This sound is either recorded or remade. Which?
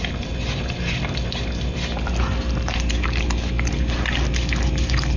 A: recorded